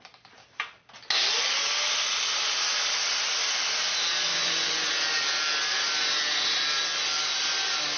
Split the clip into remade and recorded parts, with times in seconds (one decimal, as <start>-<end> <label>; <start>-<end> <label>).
0.0-4.3 recorded; 4.3-4.9 remade; 4.9-8.0 recorded

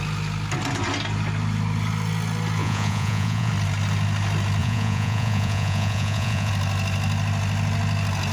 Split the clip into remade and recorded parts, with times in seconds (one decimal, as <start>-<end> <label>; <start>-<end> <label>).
0.0-2.6 recorded; 2.6-3.5 remade; 3.5-4.6 recorded; 4.6-6.5 remade; 6.5-8.3 recorded

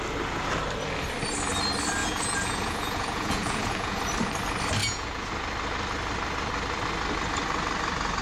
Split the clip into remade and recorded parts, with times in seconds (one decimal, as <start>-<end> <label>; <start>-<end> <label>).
0.0-2.0 recorded; 2.0-4.0 remade; 4.0-4.8 recorded; 4.8-5.3 remade; 5.3-8.2 recorded

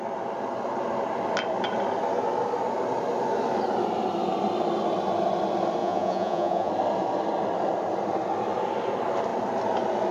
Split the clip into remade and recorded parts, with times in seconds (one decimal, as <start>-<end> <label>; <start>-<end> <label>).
0.0-5.8 recorded; 5.8-6.7 remade; 6.7-10.1 recorded

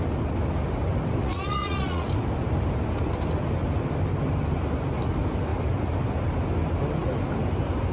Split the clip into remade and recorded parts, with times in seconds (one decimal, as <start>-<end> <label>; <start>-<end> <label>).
0.0-1.2 recorded; 1.2-2.1 remade; 2.1-7.9 recorded